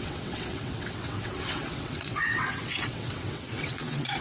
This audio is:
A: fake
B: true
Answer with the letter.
A